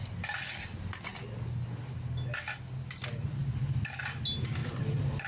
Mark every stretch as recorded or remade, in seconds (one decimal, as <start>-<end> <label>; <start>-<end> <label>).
0.0-3.4 recorded; 3.4-4.0 remade; 4.0-4.6 recorded; 4.6-5.3 remade